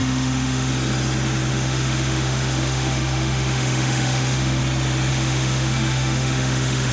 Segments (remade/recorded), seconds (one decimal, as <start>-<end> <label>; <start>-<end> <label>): 0.0-0.7 remade; 0.7-1.5 recorded; 1.5-4.6 remade; 4.6-5.1 recorded; 5.1-6.9 remade